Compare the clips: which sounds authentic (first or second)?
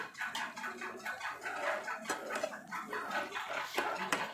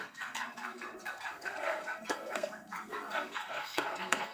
first